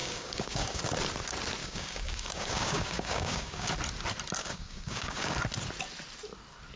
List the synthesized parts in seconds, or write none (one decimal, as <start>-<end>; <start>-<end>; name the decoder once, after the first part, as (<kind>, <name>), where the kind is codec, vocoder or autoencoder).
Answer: 0.0-0.8 (codec, DAC); 1.6-3.7; 4.4-5.4